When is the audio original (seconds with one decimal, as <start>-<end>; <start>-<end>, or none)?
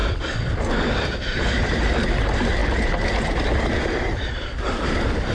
0.0-1.2; 2.6-3.8